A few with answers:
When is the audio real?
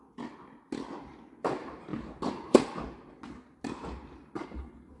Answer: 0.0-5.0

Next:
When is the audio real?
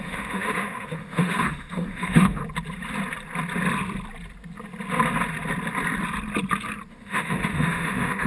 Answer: 2.4-6.9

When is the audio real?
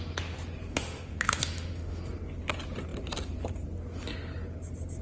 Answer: 0.0-0.7; 2.0-5.0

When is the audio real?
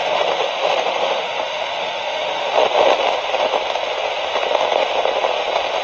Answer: 2.5-5.8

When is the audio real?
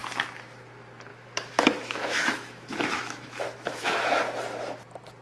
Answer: 0.0-1.1; 4.2-5.2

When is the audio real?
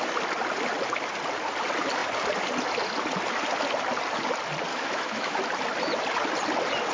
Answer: 0.0-4.7; 5.4-6.9